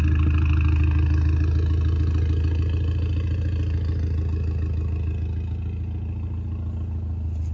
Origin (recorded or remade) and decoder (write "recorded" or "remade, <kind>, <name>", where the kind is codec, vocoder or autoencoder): recorded